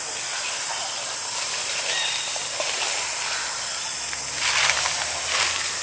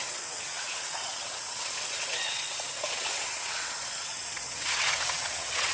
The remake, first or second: second